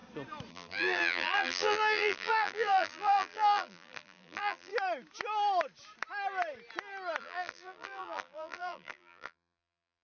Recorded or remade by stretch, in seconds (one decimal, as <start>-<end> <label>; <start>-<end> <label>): 0.0-0.5 recorded; 0.5-4.7 remade; 4.7-7.2 recorded; 7.2-10.0 remade